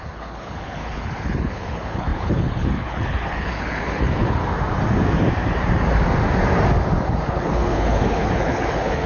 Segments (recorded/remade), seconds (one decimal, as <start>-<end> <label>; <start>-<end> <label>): 0.0-4.4 remade; 4.4-7.3 recorded; 7.3-9.1 remade